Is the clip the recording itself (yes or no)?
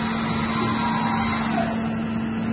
yes